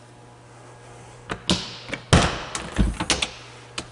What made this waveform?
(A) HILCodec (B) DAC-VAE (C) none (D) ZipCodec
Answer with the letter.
C